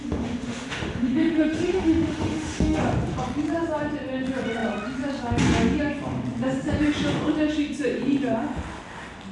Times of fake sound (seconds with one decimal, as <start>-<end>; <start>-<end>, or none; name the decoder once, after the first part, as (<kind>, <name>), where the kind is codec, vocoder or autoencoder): 0.0-2.8 (autoencoder, DAC-VAE)